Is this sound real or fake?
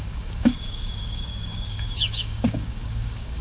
fake